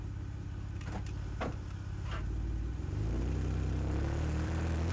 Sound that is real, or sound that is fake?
fake